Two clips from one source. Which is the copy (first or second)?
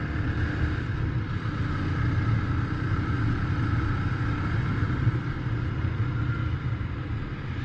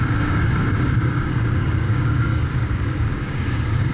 second